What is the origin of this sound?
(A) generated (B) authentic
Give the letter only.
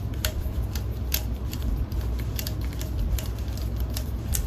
A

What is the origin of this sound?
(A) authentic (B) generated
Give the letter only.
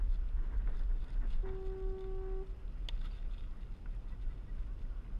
A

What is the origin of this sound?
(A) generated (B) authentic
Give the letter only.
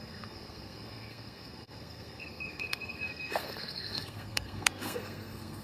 A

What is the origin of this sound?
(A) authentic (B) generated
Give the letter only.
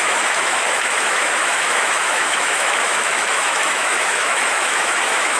B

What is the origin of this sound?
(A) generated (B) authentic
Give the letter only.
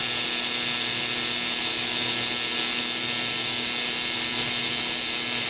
B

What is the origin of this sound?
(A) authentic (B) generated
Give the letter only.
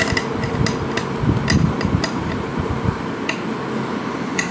A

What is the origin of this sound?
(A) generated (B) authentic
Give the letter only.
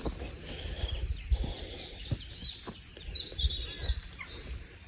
B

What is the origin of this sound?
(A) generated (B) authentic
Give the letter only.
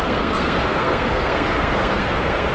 A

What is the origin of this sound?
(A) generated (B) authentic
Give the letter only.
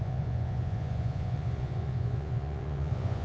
A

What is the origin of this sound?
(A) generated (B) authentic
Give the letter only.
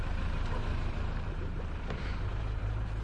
A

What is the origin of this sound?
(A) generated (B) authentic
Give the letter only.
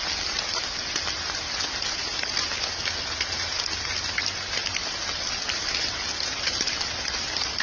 B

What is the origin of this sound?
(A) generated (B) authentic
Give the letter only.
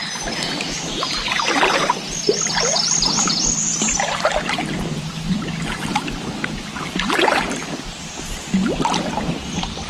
B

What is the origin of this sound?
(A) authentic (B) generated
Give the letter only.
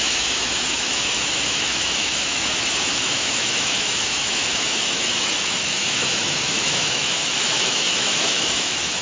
B